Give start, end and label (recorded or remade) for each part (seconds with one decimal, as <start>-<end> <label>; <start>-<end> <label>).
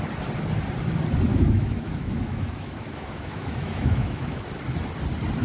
0.0-1.3 recorded; 1.3-4.5 remade; 4.5-5.4 recorded